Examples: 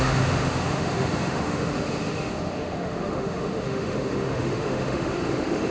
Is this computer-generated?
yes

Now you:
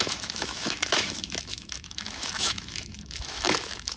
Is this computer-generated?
yes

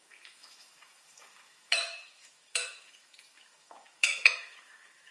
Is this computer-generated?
yes